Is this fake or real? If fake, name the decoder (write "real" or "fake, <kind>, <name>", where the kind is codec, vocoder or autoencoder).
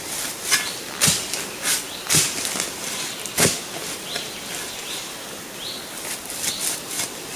real